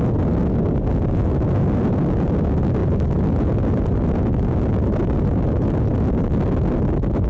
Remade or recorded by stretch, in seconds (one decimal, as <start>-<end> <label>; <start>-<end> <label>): 0.0-7.3 recorded